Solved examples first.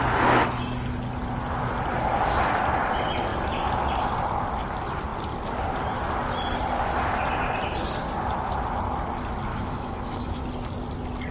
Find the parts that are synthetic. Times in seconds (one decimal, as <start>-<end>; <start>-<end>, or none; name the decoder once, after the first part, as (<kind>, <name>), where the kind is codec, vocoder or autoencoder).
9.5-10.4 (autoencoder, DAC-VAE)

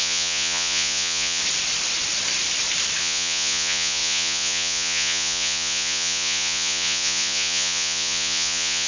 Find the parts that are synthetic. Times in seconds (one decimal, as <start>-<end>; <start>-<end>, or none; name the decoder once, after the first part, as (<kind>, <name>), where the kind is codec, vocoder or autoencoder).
0.0-1.4 (vocoder, Vocos); 3.0-8.9

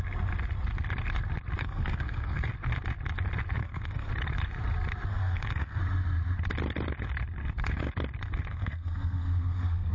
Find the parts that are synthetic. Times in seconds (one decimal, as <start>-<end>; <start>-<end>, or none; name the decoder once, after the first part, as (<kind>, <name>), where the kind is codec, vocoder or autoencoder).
1.6-2.5 (codec, SNAC); 3.6-4.1; 5.1-5.8; 8.5-9.9

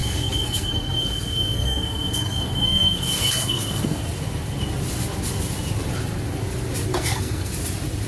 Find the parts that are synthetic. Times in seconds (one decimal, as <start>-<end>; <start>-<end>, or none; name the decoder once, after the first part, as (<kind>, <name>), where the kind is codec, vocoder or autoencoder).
0.0-4.0 (codec, SNAC); 6.9-7.5

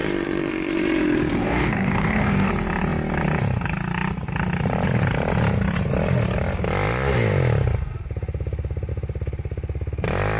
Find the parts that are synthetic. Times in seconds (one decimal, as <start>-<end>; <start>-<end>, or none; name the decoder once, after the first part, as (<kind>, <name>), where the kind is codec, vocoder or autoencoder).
1.4-2.5 (codec, DAC)

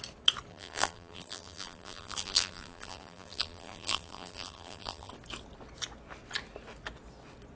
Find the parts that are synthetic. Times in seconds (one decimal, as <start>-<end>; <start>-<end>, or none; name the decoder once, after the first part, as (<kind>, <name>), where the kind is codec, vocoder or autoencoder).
0.5-5.1 (vocoder, BigVGAN v2)

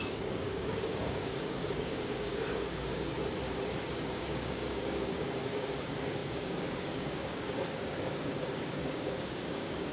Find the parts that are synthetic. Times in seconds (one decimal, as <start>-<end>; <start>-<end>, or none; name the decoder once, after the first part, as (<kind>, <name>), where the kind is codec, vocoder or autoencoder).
0.0-3.2 (codec, DAC); 4.1-9.9